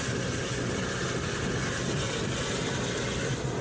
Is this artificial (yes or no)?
no